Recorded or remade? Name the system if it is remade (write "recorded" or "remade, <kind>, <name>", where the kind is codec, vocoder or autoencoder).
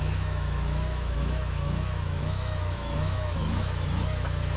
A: remade, autoencoder, DAC-VAE